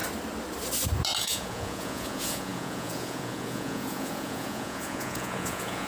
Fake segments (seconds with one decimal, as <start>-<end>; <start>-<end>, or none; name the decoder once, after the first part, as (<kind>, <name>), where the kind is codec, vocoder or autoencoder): 1.2-5.9 (vocoder, Vocos)

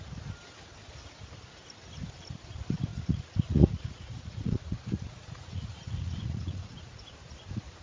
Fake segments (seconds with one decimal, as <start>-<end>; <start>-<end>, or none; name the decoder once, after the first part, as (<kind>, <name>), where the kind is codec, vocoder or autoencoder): 2.9-7.8 (vocoder, Vocos)

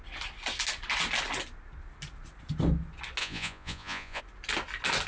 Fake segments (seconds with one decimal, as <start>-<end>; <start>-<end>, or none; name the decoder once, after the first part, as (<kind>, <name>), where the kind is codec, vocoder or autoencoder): 3.2-4.2 (vocoder, Vocos)

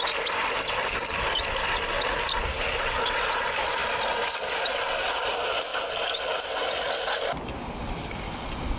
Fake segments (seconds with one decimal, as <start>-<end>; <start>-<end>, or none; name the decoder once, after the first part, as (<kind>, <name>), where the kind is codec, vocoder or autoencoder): none

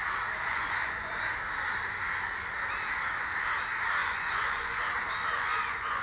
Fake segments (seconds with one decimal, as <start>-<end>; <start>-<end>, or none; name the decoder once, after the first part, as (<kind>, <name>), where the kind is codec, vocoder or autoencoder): 0.5-1.1 (vocoder, Vocos); 4.0-4.8; 5.3-6.0